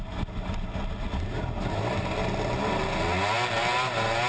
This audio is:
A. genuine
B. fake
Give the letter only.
A